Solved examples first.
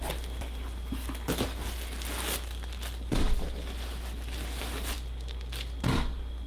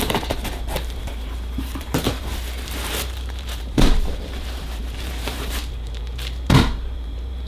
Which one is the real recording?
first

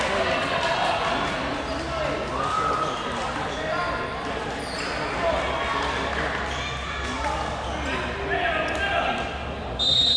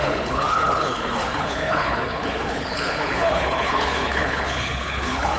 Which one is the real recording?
first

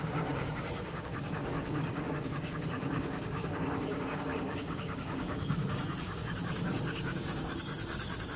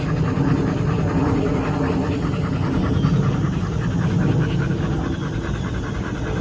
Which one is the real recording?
second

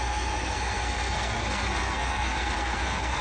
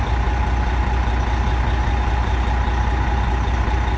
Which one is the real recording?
second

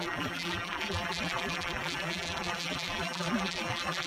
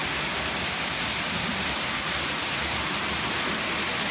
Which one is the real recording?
second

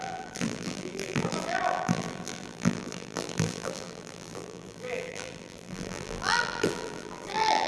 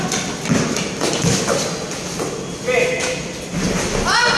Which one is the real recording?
second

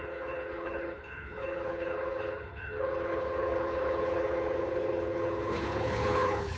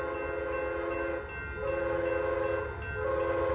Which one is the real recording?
second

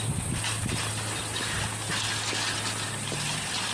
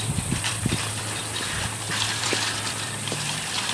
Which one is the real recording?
first